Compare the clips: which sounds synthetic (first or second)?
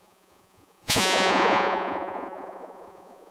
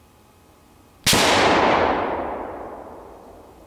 first